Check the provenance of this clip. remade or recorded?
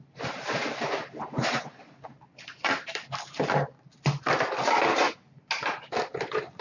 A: recorded